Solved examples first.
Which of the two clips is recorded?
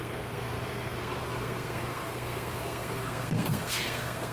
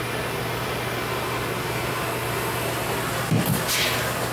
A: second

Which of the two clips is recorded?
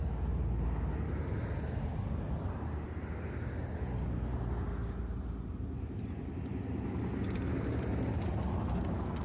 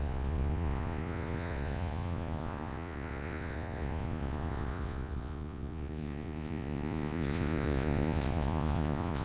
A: first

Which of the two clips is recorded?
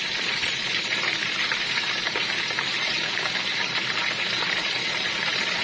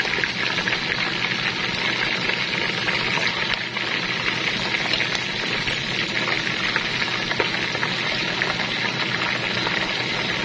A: second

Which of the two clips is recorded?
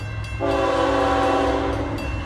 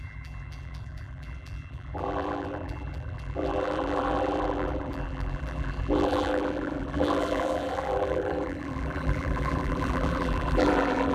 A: first